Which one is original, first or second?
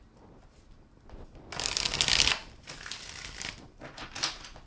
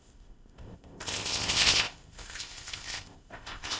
first